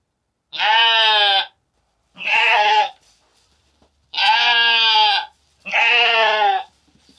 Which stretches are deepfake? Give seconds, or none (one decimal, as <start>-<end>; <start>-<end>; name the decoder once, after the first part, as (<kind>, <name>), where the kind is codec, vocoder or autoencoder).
none